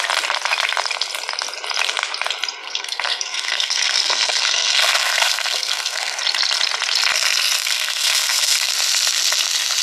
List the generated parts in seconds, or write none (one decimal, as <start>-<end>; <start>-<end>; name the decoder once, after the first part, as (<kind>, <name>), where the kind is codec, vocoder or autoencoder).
2.6-6.2 (codec, SNAC); 7.6-8.7